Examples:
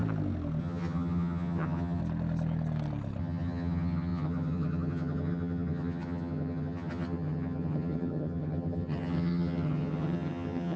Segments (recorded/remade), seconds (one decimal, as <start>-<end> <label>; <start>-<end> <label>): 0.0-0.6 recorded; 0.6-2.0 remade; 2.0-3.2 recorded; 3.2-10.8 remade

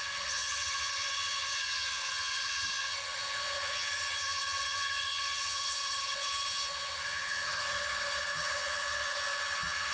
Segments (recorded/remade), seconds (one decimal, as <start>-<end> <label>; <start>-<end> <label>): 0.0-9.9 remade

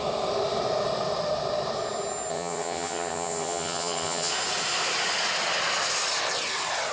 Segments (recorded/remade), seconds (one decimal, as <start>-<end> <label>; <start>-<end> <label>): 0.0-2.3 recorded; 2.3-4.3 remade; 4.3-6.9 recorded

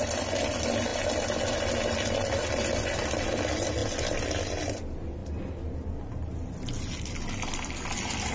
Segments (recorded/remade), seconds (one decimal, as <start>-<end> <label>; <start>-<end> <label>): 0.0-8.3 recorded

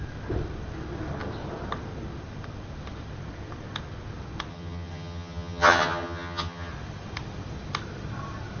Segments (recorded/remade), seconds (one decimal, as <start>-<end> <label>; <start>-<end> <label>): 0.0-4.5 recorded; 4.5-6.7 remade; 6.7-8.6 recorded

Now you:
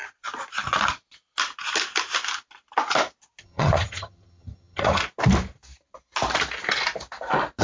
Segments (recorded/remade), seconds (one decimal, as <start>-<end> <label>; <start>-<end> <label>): 0.0-3.4 recorded; 3.4-5.0 remade; 5.0-7.6 recorded